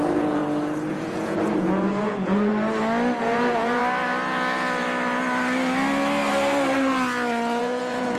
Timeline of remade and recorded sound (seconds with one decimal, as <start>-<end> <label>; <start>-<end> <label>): 0.0-0.4 remade; 0.4-0.9 recorded; 0.9-2.5 remade; 2.5-3.2 recorded; 3.2-3.8 remade; 3.8-7.6 recorded; 7.6-8.2 remade